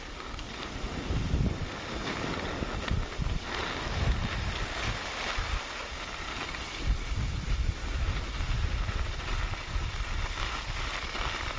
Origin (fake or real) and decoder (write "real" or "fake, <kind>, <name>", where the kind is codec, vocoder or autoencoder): real